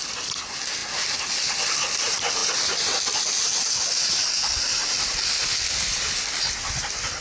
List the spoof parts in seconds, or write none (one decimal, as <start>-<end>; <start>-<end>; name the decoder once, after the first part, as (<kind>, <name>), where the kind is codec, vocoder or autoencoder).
none